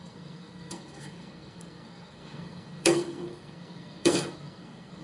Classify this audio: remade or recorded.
remade